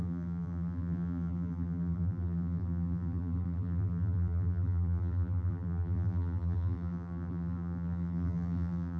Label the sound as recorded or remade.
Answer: remade